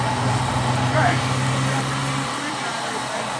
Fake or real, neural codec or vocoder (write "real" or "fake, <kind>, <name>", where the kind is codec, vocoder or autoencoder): real